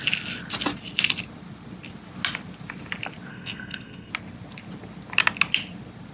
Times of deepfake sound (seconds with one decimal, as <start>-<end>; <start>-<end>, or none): 3.3-4.1